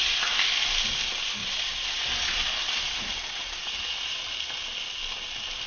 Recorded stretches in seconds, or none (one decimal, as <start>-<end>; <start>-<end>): 0.0-1.4; 3.8-5.7